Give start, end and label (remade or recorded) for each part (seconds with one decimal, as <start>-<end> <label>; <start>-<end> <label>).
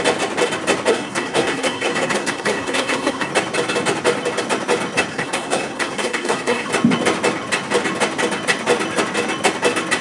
0.0-0.9 recorded; 0.9-3.3 remade; 3.3-5.1 recorded; 5.1-6.7 remade; 6.7-10.0 recorded